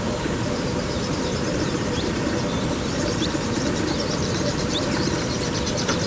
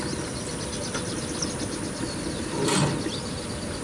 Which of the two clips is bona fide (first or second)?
second